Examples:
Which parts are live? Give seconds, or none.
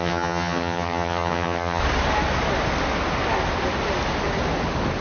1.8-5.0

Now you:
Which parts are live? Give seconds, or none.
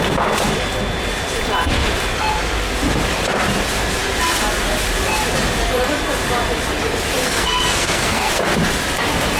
0.0-7.2; 8.4-9.4